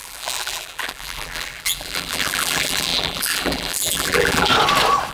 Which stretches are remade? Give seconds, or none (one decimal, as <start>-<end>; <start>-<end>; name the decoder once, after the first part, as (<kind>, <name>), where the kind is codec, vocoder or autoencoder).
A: 0.0-4.5 (vocoder, BigVGAN v2)